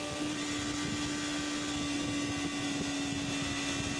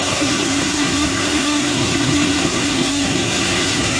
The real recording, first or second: first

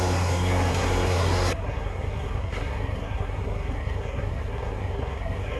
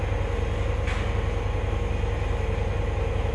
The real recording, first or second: second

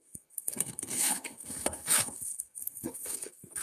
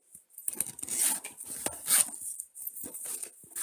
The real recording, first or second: second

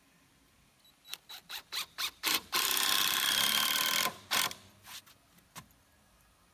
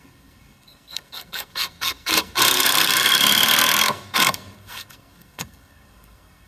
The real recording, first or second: first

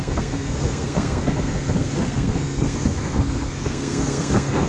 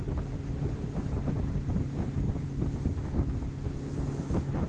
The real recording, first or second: second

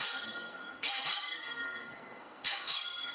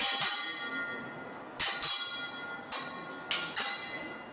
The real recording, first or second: second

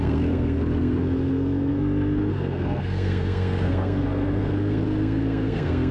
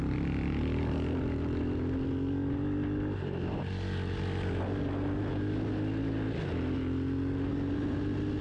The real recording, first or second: second